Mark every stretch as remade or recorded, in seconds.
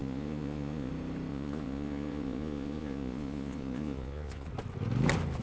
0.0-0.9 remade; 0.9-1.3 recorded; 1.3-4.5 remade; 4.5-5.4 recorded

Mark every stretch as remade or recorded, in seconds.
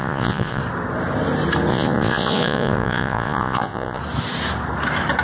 0.0-0.6 remade; 0.6-1.7 recorded; 1.7-4.0 remade; 4.0-5.2 recorded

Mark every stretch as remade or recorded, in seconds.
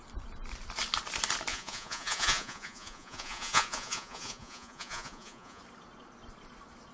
0.0-1.5 recorded; 1.5-5.6 remade; 5.6-6.9 recorded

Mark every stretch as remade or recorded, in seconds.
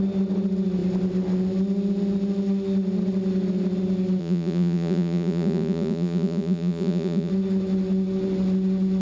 0.0-4.2 recorded; 4.2-7.3 remade; 7.3-9.0 recorded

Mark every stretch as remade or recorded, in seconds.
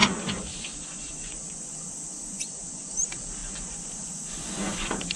0.0-2.9 remade; 2.9-3.4 recorded; 3.4-5.2 remade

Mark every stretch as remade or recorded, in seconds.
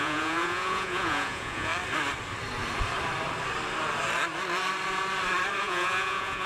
0.0-1.7 remade; 1.7-5.6 recorded; 5.6-6.5 remade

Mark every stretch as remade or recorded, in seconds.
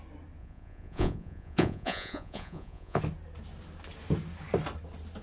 0.0-0.4 recorded; 0.4-3.0 remade; 3.0-5.2 recorded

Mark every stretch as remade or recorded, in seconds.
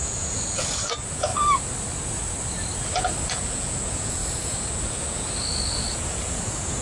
0.0-1.3 remade; 1.3-3.3 recorded; 3.3-6.8 remade